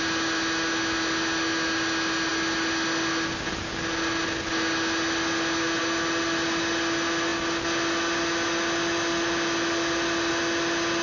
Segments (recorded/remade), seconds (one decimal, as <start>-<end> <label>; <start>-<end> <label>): 0.0-11.0 recorded